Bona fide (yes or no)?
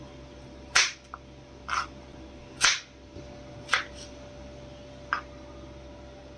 yes